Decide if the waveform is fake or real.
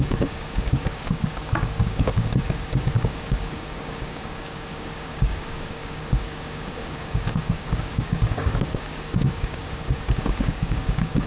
fake